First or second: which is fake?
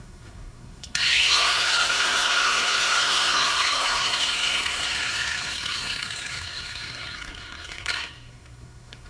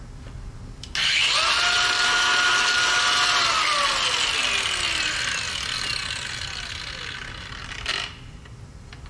first